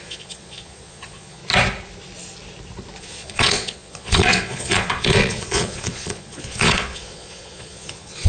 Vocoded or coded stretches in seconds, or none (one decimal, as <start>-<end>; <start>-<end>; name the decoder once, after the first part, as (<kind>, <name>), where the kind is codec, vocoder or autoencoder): 0.0-1.4 (vocoder, Vocos); 3.0-8.3